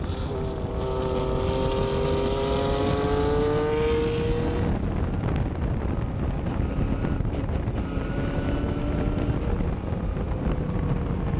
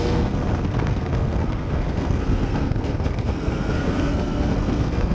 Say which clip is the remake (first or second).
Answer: second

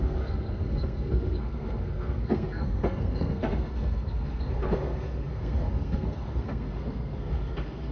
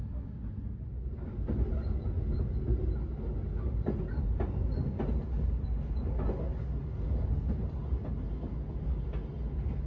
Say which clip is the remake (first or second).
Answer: first